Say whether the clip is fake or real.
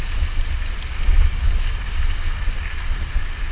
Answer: real